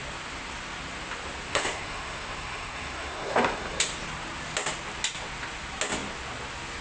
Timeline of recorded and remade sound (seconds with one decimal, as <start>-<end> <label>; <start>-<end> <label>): 0.0-1.5 recorded; 1.5-3.8 remade; 3.8-6.8 recorded